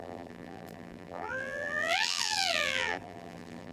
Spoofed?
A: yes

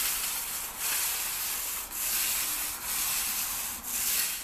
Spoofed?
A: no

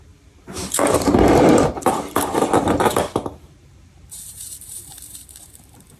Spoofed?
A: yes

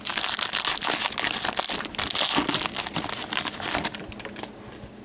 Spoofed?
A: no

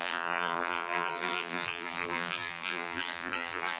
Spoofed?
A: yes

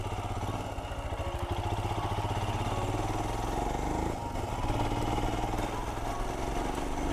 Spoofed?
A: no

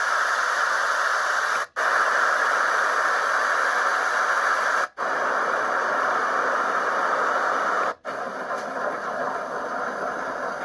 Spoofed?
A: yes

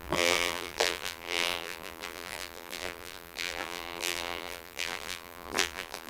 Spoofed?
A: yes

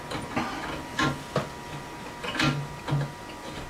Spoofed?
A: no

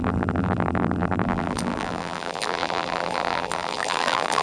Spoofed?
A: yes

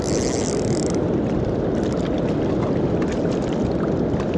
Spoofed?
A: no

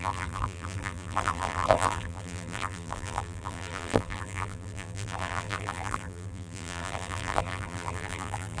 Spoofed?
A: yes